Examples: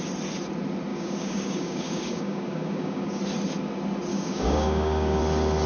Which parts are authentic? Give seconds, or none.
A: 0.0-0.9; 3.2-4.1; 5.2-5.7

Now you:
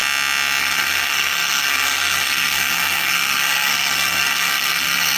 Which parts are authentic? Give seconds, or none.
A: 0.0-0.6

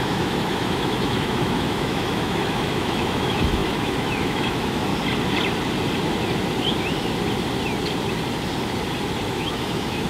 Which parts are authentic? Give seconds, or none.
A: 4.9-9.3

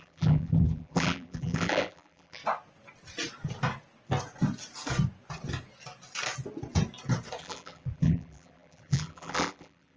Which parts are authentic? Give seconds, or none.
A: 2.4-7.4

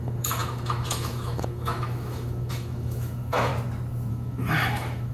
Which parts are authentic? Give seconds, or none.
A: 3.5-4.1

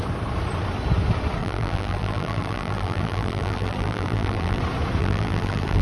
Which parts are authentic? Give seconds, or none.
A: 0.0-1.4; 4.6-5.0

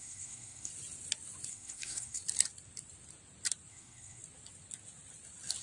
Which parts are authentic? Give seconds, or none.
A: 0.7-1.5; 2.2-3.7; 4.2-5.6